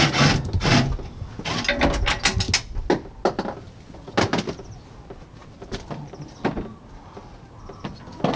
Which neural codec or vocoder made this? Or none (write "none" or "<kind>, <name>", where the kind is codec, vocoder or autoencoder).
none